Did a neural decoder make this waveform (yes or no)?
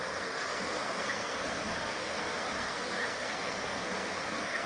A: yes